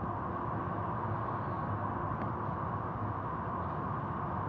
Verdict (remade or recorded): recorded